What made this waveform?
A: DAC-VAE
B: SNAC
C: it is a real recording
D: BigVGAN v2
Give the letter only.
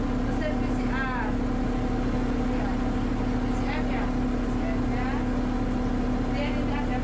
C